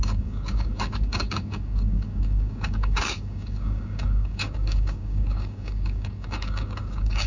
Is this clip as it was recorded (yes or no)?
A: no